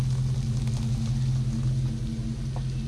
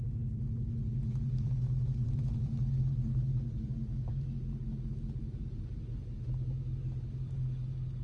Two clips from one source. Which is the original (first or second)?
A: first